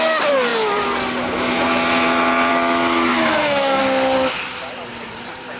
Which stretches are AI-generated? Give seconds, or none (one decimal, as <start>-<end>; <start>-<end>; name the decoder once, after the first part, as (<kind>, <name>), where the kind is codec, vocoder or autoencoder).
3.1-3.8 (autoencoder, DAC-VAE)

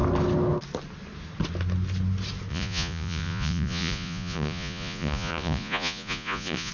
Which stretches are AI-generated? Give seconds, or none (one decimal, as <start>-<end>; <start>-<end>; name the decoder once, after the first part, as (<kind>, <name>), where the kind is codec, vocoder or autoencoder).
2.5-6.7 (vocoder, Vocos)

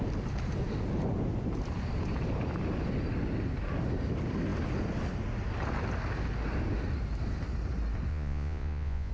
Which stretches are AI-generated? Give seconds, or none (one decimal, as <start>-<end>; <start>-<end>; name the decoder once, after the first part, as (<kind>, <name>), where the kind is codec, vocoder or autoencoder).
8.1-9.1 (vocoder, Vocos)

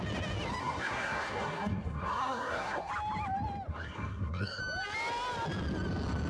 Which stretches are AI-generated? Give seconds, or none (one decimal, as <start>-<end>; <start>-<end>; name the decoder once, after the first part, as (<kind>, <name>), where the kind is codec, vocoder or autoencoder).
0.6-2.9 (codec, SNAC); 3.7-4.6

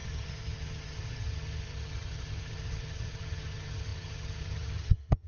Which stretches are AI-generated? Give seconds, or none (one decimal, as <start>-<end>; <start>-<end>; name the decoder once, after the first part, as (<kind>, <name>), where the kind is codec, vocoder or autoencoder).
0.0-5.3 (vocoder, HiFi-GAN)